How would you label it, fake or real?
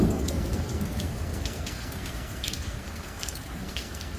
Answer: fake